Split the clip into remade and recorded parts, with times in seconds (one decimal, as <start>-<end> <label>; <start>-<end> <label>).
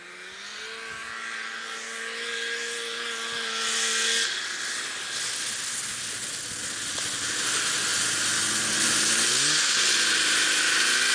0.0-11.1 recorded